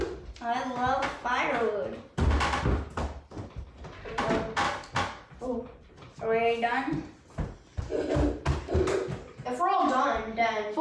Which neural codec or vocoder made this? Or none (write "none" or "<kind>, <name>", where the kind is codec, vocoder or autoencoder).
none